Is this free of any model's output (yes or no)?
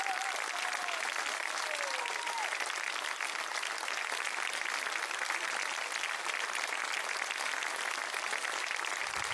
yes